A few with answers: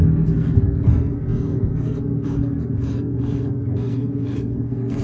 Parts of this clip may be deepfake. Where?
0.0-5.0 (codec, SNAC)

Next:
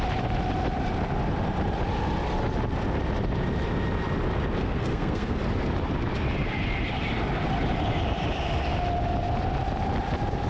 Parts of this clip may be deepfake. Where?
4.6-5.4 (codec, SNAC)

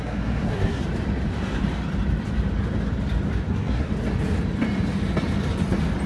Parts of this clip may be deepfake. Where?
0.0-0.8 (codec, SNAC); 3.5-3.9